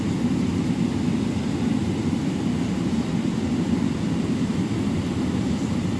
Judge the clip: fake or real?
real